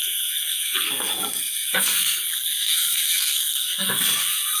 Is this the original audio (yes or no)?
no